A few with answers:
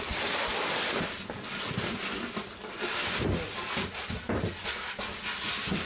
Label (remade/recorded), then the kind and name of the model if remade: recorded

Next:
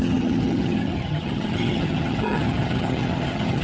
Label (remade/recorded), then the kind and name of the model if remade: remade, vocoder, HiFi-GAN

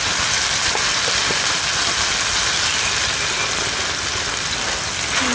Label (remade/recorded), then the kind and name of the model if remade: recorded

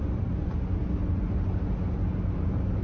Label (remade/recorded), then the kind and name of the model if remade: recorded